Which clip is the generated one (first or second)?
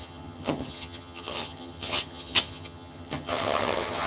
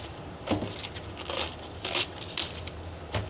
first